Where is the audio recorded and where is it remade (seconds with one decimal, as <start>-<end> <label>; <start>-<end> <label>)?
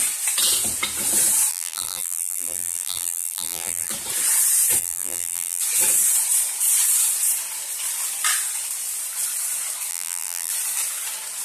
0.0-1.5 recorded; 1.5-3.9 remade; 3.9-4.8 recorded; 4.8-5.6 remade; 5.6-9.9 recorded; 9.9-10.5 remade; 10.5-11.4 recorded